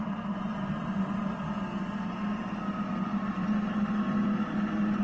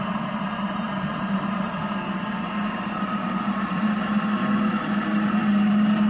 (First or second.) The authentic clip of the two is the first